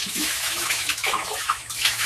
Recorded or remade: remade